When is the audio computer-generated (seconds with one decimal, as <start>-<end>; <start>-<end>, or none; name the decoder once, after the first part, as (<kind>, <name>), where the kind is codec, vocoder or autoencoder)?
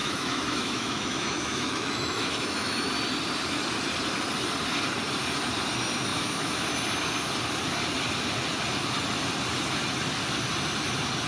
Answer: 0.0-2.9 (autoencoder, DAC-VAE); 6.1-6.7